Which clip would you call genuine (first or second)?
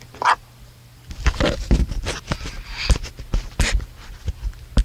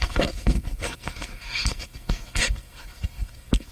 first